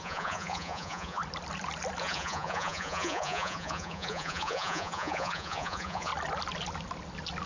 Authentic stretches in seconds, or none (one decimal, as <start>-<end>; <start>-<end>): 1.2-2.0; 6.1-7.5